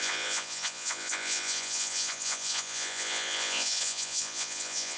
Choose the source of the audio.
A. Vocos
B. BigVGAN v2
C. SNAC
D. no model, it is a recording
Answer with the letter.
A